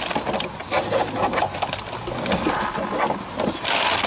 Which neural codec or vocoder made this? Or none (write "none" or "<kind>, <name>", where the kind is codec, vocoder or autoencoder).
none